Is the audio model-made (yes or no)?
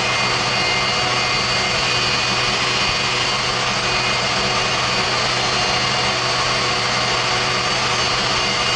no